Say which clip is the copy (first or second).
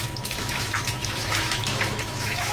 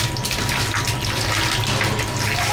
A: first